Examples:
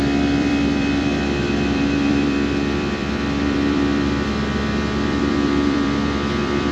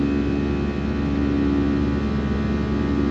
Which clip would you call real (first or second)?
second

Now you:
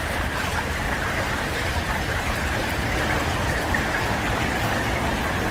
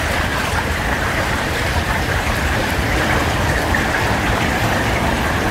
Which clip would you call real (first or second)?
first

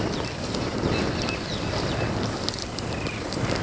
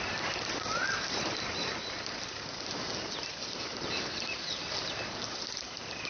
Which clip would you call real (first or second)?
first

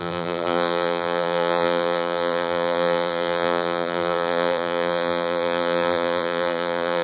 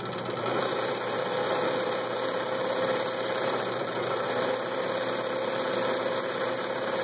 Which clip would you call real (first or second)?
second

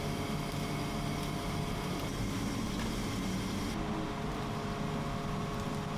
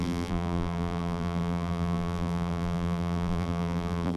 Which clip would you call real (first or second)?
first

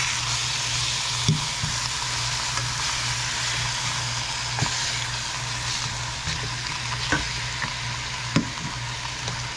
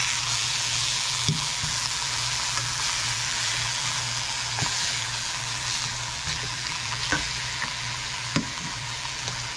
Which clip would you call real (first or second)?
first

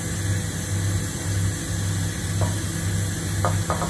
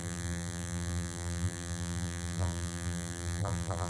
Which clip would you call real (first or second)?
first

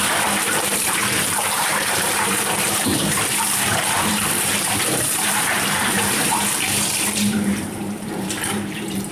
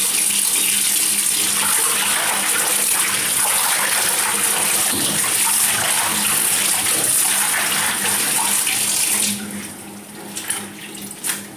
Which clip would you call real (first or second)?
second